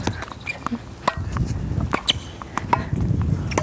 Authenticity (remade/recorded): recorded